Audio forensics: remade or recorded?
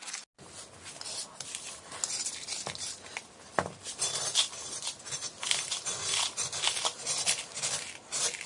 recorded